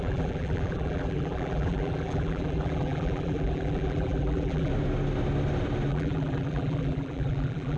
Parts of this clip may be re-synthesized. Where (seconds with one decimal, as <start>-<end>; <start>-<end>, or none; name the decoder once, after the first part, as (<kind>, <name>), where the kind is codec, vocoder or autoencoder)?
0.0-4.7 (vocoder, BigVGAN v2); 5.9-7.8